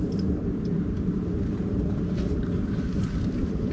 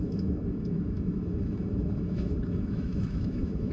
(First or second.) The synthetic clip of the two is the second